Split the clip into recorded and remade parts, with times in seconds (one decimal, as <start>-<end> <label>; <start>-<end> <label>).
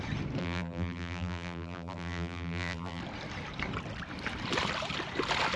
0.0-0.4 recorded; 0.4-3.0 remade; 3.0-5.6 recorded